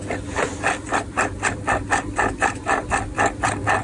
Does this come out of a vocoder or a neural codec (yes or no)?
yes